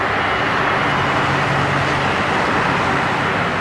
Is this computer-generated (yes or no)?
no